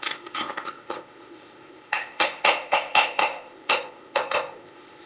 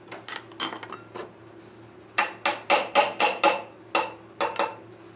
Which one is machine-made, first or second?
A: first